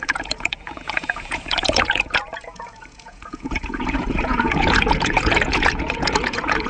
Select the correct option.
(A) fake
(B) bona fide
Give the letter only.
A